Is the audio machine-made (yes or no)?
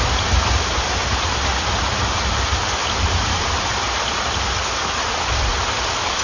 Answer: no